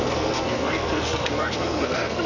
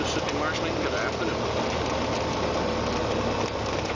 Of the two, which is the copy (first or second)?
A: first